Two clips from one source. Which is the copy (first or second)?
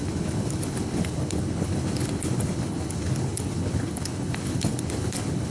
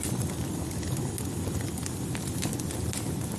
first